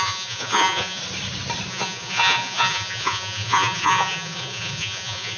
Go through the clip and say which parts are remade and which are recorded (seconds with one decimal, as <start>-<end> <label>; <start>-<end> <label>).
0.0-1.0 remade; 1.0-1.7 recorded; 1.7-5.4 remade